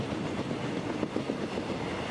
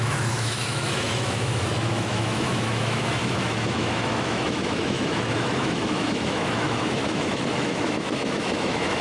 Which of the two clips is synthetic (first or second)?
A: second